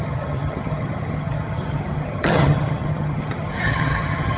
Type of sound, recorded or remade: remade